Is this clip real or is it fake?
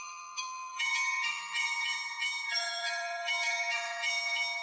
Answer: fake